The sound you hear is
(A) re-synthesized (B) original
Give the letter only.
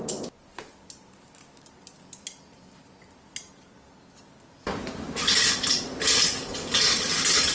B